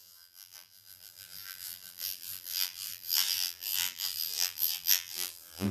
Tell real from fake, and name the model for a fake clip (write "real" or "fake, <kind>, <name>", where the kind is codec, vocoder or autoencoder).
fake, vocoder, BigVGAN v2